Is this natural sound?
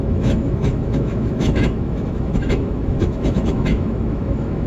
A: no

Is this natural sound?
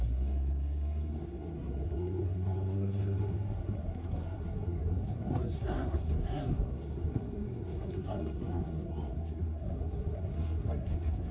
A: no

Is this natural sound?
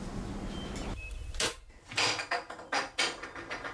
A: yes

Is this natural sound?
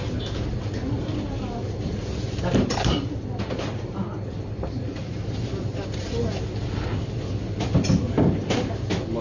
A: yes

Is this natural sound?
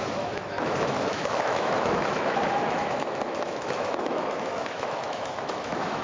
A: no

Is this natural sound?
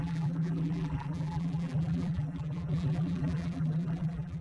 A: no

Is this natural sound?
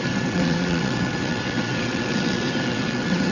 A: no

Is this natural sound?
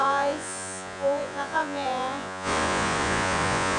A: no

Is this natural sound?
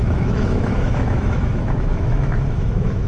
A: no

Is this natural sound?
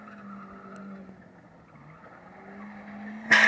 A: yes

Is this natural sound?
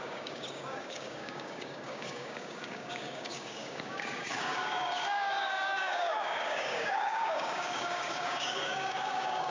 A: no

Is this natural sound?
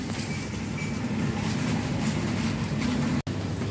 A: yes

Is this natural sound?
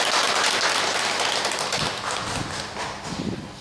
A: yes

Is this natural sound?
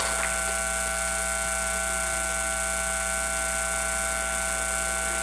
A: yes